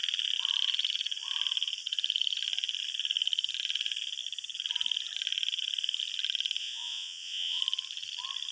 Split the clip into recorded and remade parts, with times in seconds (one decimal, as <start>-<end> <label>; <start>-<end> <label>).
0.0-6.6 recorded; 6.6-7.6 remade; 7.6-8.5 recorded